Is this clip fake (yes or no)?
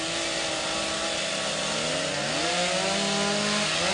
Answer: no